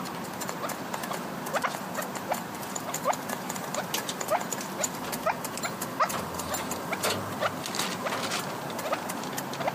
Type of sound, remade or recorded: recorded